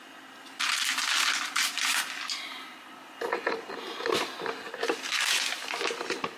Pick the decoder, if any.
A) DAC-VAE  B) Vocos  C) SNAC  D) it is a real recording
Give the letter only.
D